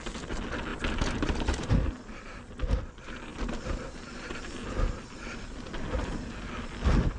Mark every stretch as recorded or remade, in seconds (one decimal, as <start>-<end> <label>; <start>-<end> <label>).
0.0-7.2 recorded